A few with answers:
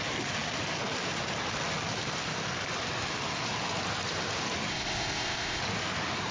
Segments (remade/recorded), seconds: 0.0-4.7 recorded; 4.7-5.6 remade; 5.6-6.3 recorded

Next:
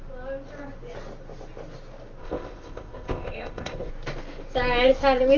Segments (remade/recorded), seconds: 0.0-2.2 recorded; 2.2-3.9 remade; 3.9-5.4 recorded

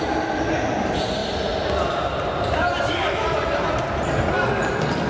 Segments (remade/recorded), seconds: 0.0-5.1 recorded

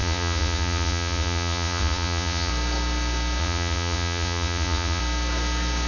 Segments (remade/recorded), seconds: 0.0-2.5 remade; 2.5-3.4 recorded; 3.4-5.0 remade; 5.0-5.9 recorded

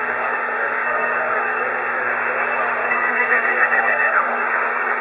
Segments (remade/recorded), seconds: 0.0-2.1 remade; 2.1-2.9 recorded; 2.9-5.0 remade

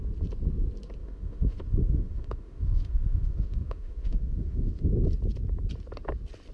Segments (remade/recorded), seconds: 0.0-1.0 recorded; 1.0-4.9 remade; 4.9-6.5 recorded

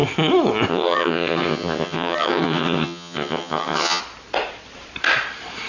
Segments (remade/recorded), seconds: 0.0-0.7 recorded; 0.7-4.0 remade; 4.0-5.7 recorded

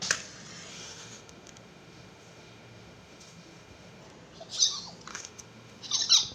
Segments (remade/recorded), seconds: 0.0-0.7 recorded; 0.7-4.0 remade; 4.0-5.1 recorded; 5.1-5.8 remade; 5.8-6.3 recorded